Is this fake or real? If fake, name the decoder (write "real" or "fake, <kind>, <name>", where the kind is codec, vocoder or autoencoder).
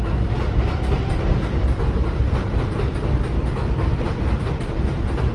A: real